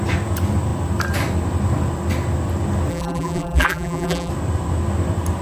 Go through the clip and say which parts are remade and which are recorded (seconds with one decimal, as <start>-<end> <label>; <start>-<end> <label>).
0.0-2.9 recorded; 2.9-4.3 remade; 4.3-5.4 recorded